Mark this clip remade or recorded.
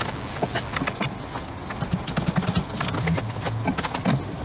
recorded